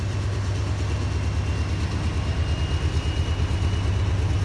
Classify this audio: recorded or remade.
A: recorded